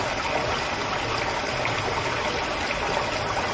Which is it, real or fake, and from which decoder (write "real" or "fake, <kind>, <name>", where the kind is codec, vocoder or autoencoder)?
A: real